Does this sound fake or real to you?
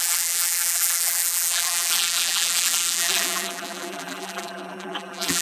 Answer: fake